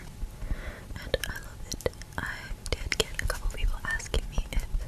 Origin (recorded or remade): recorded